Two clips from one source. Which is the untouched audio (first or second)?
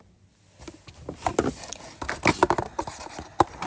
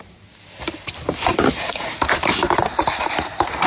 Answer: first